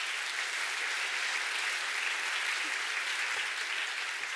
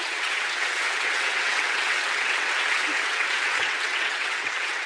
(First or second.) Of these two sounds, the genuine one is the first